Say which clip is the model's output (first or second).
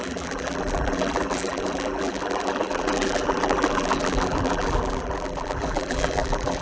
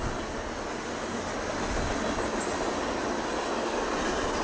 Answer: first